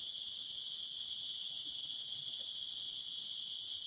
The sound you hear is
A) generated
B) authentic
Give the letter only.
B